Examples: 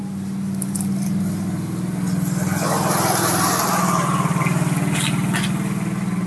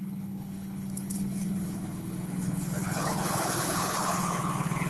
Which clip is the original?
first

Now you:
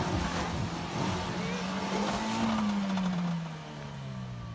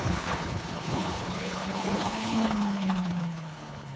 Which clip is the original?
first